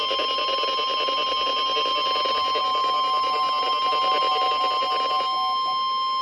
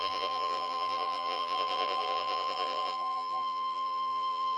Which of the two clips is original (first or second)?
first